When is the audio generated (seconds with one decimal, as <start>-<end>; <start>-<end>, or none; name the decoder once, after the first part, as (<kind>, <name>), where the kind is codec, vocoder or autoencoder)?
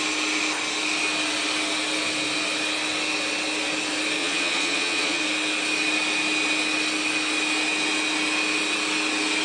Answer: 4.2-5.2 (vocoder, Vocos)